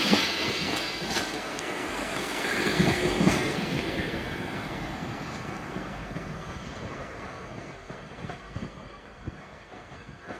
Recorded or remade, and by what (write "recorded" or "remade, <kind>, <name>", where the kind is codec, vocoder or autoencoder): remade, codec, SNAC